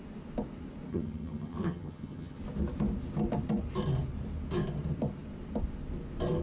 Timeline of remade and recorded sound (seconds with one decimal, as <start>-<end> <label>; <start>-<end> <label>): 0.0-0.9 recorded; 0.9-2.4 remade; 2.4-6.4 recorded